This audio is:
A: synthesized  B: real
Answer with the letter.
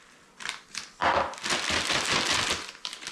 B